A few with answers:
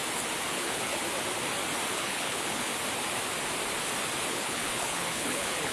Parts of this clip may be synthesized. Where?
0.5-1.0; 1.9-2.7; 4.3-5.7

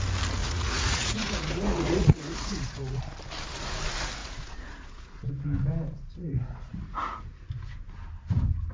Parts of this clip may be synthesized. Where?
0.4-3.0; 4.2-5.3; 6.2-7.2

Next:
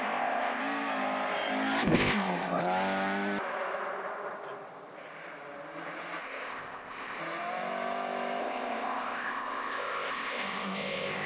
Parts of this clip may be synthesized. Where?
0.0-0.6; 1.8-2.6; 6.2-7.2; 8.4-11.3

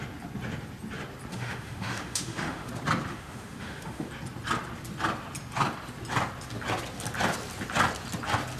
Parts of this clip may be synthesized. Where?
1.3-2.7; 3.1-4.1

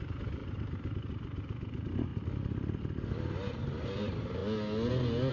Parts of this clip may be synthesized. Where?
0.0-2.1; 3.1-4.4

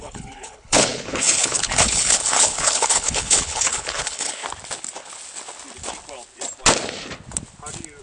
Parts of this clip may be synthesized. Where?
0.0-4.4

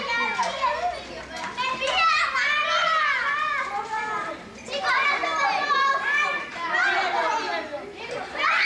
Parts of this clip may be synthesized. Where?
none

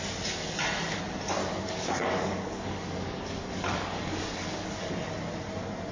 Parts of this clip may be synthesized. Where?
1.4-4.9